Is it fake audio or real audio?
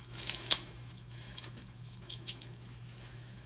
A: fake